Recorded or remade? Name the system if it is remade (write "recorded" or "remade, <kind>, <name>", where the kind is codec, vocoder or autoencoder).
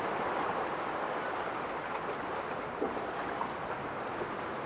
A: recorded